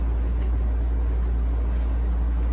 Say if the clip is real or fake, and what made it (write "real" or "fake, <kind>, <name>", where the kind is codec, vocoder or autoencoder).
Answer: real